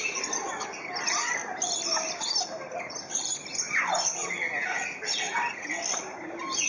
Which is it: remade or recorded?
recorded